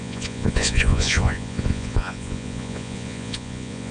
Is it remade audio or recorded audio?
remade